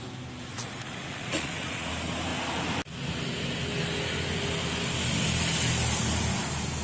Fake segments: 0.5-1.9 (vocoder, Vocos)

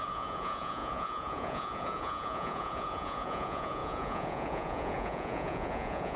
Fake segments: 0.0-6.2 (vocoder, Vocos)

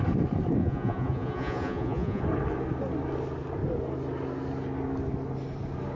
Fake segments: 0.6-2.2 (vocoder, Vocos)

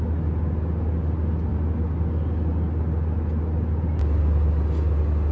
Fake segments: none